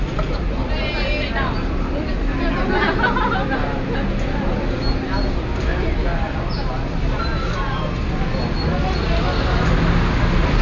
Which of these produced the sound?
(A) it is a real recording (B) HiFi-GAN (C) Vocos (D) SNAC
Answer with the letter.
A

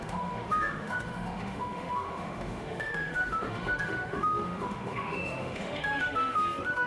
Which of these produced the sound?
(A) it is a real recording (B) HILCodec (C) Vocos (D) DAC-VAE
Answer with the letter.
D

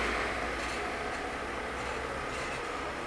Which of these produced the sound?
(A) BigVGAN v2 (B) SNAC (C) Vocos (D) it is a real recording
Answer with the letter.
D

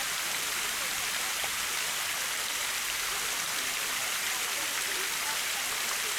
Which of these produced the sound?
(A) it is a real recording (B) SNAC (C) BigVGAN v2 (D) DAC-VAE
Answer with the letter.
C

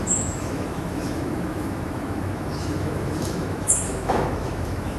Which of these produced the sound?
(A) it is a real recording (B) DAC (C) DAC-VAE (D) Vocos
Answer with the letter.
C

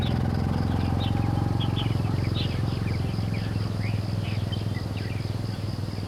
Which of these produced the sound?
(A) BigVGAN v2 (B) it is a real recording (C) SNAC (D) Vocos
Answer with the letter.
B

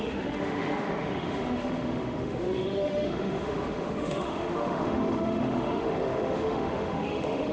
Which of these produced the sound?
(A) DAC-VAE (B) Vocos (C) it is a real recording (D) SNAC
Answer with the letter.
A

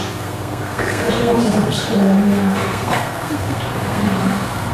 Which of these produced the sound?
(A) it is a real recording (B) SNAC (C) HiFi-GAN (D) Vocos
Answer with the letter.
B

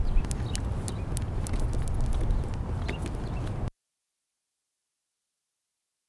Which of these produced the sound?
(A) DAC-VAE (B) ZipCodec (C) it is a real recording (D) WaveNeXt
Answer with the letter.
C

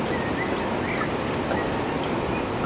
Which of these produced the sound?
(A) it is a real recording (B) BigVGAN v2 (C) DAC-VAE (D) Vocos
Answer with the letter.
A